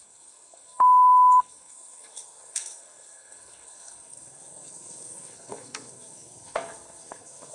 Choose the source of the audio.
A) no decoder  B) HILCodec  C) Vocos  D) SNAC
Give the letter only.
D